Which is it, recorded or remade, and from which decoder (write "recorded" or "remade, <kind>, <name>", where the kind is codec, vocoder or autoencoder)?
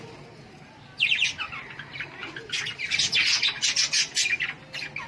recorded